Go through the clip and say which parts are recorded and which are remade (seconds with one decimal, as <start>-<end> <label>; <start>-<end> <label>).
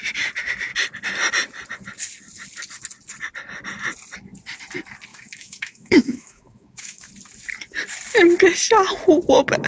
0.0-5.1 recorded; 5.1-7.1 remade; 7.1-9.7 recorded